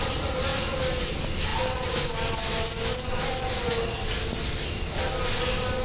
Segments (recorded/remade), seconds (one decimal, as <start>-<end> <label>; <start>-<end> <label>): 0.0-5.8 recorded